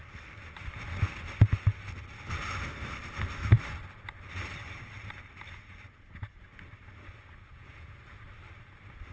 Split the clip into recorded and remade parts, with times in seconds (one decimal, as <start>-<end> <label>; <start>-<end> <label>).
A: 0.0-7.4 recorded; 7.4-8.0 remade; 8.0-9.1 recorded